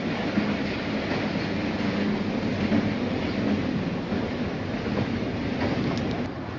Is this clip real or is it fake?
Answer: real